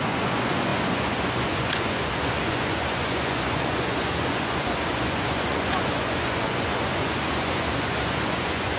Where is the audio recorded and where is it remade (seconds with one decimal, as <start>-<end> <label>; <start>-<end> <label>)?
0.0-8.8 remade